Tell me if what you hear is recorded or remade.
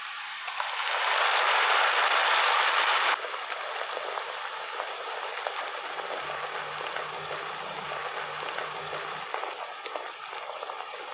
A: recorded